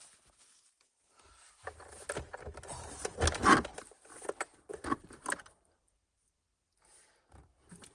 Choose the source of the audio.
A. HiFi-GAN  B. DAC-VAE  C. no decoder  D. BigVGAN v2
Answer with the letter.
C